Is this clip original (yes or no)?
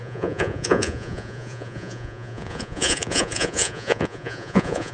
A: no